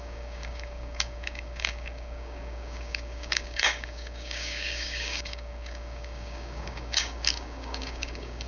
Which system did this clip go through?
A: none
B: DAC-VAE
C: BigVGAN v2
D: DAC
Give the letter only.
D